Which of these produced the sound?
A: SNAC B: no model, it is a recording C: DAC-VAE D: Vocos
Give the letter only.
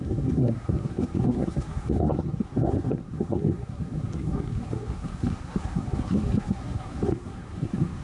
A